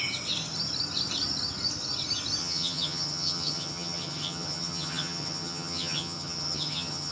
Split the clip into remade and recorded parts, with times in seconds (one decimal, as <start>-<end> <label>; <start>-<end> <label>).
0.0-2.4 recorded; 2.4-7.1 remade